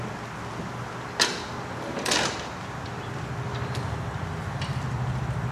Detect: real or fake real